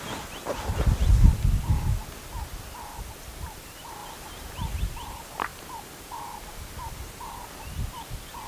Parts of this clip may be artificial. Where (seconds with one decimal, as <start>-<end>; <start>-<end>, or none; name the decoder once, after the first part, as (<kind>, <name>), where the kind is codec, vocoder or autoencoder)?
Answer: none